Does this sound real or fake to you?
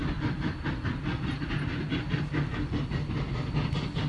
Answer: real